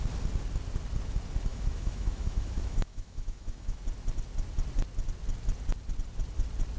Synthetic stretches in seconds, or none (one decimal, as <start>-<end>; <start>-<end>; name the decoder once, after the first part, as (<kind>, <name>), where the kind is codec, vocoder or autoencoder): 1.5-3.8 (autoencoder, DAC-VAE)

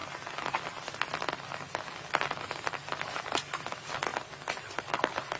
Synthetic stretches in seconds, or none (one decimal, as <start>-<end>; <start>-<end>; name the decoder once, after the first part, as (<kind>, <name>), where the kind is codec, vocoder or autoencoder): none

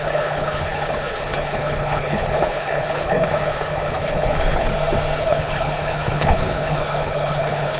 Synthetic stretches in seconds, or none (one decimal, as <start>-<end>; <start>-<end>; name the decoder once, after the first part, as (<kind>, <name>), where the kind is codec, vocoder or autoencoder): 0.0-4.7 (codec, HILCodec); 5.2-7.8

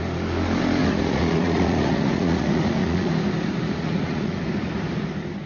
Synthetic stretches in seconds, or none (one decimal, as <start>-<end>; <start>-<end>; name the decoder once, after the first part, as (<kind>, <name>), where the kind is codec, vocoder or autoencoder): 0.8-3.1 (vocoder, Vocos); 3.8-4.4

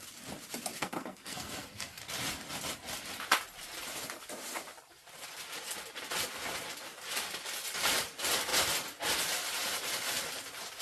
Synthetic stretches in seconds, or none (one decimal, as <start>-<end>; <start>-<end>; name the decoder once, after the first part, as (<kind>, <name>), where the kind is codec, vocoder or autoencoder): 0.7-2.0 (codec, SNAC)

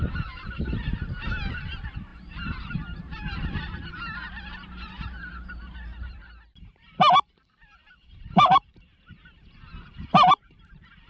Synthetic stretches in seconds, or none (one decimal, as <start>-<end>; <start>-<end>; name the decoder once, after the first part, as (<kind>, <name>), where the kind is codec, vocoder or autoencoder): 0.0-11.1 (vocoder, BigVGAN v2)

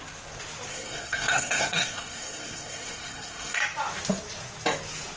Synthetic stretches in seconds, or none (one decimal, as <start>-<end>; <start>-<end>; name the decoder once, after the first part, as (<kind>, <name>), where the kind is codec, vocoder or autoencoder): 0.7-3.6 (codec, SNAC)

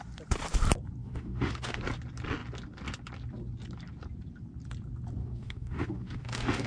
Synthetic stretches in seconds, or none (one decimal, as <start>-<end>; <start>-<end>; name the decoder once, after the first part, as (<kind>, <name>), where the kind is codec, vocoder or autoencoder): 1.0-1.8 (autoencoder, DAC-VAE); 5.2-6.7